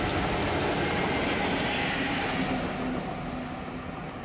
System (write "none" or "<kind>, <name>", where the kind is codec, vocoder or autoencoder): none